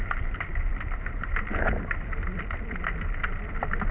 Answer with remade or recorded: recorded